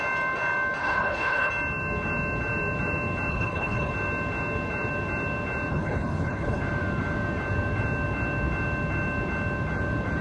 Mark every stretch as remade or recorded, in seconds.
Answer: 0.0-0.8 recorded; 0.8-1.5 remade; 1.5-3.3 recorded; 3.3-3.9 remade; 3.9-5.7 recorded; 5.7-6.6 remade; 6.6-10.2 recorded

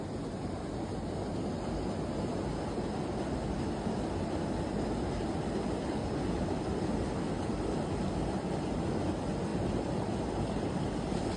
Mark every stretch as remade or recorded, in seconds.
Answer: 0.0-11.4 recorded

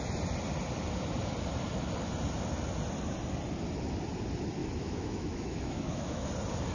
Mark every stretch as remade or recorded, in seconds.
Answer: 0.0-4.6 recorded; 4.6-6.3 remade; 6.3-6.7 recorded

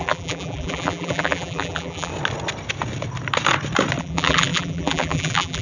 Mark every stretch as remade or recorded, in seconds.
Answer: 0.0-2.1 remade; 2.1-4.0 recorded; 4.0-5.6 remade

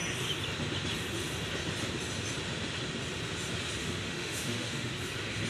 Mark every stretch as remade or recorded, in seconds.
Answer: 0.0-3.8 recorded; 3.8-4.9 remade; 4.9-5.5 recorded

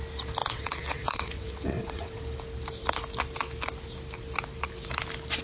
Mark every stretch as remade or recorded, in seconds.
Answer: 0.0-0.4 recorded; 0.4-2.2 remade; 2.2-5.4 recorded